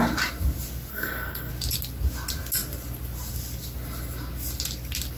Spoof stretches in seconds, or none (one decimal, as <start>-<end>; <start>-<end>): 0.9-1.5